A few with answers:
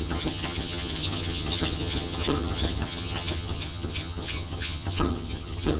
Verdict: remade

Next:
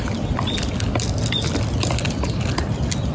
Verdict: recorded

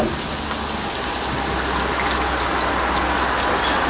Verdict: recorded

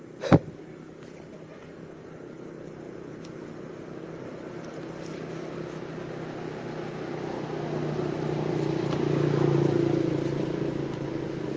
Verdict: recorded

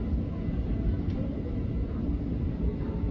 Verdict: recorded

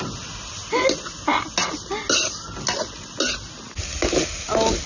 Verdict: recorded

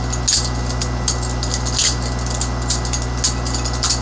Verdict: recorded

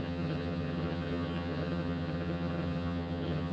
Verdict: remade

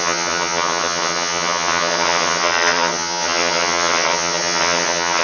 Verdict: remade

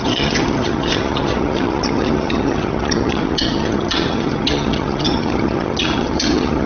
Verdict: remade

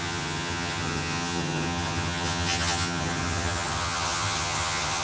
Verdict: remade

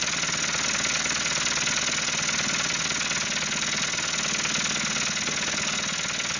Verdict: recorded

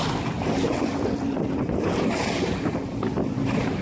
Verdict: recorded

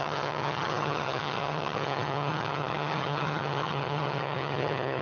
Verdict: remade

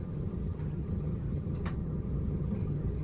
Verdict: remade